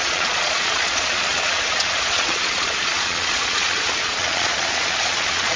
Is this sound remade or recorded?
remade